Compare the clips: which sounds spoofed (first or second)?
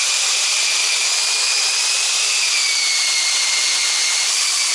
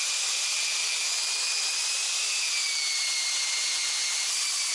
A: first